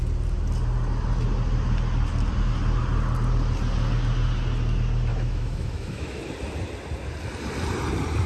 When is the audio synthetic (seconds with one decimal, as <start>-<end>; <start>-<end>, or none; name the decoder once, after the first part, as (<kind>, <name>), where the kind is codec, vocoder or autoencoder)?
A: 5.1-6.2 (autoencoder, DAC-VAE)